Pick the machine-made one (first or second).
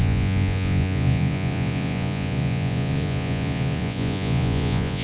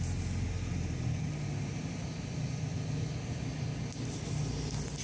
first